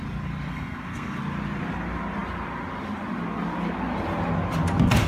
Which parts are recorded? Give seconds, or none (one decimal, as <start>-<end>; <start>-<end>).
0.0-0.5; 1.2-5.1

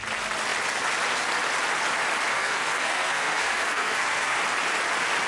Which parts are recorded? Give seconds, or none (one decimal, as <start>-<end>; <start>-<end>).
0.0-2.3; 4.4-5.3